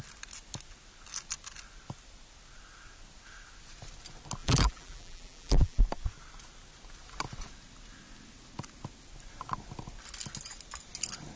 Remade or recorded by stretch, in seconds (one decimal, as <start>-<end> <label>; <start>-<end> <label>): 0.0-4.4 recorded; 4.4-5.8 remade; 5.8-11.4 recorded